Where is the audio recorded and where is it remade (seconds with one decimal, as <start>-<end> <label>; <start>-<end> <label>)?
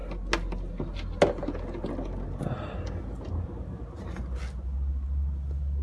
0.0-5.8 recorded